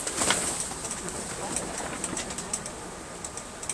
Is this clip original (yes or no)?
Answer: yes